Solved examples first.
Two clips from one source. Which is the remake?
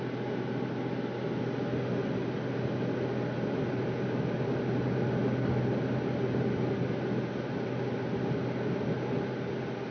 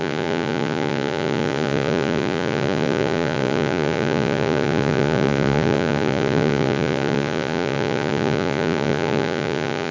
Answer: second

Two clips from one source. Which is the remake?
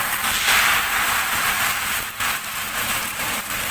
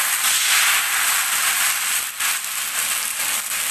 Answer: first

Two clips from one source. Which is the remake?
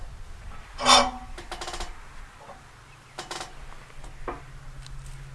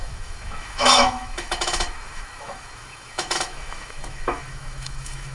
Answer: second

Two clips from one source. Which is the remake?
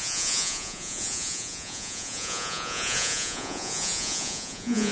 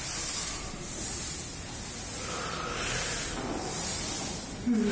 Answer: first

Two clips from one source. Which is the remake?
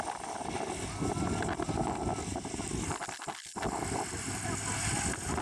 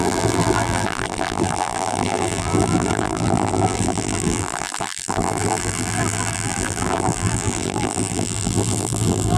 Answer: second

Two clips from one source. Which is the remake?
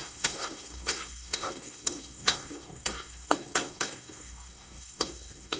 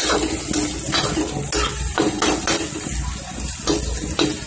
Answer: first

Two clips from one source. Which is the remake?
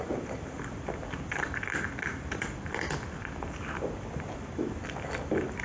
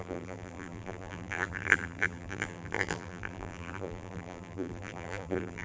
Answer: second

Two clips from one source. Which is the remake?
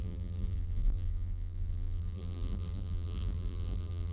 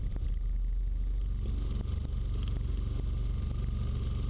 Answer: first